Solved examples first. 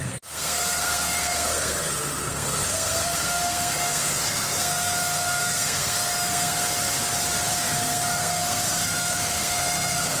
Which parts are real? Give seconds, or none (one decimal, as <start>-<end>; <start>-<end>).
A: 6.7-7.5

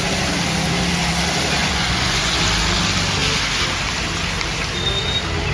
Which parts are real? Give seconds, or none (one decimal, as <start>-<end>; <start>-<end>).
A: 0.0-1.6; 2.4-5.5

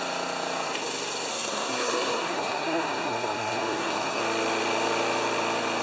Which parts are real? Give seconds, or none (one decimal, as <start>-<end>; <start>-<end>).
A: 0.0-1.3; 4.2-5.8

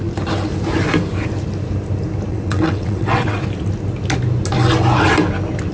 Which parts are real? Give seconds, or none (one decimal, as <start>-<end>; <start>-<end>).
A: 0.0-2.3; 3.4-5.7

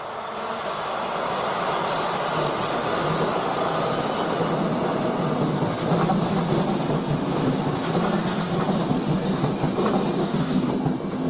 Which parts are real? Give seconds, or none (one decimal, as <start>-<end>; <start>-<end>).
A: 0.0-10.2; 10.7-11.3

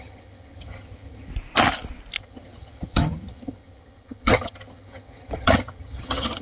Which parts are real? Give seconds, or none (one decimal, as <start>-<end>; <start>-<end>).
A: 1.3-2.2